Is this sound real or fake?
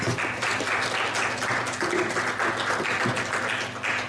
real